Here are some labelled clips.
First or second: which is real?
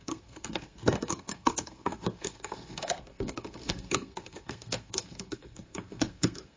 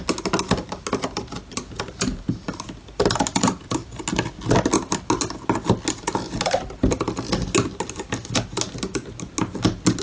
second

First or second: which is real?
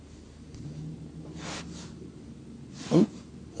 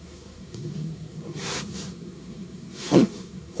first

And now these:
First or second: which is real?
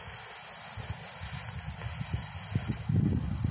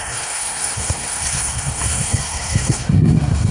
first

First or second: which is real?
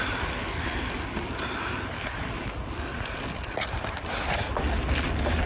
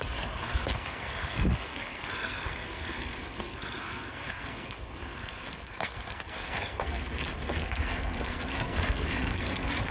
first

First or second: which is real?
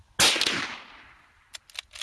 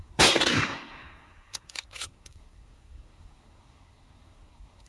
first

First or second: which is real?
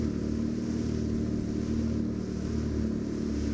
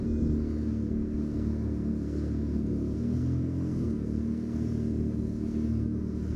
first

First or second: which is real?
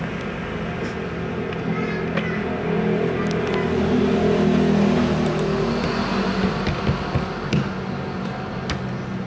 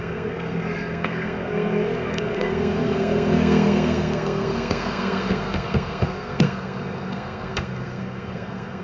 first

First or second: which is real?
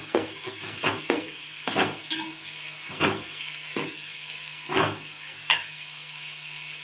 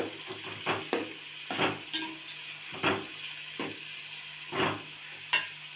second